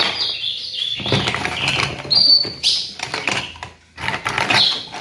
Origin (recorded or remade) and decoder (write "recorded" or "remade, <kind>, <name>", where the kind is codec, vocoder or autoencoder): recorded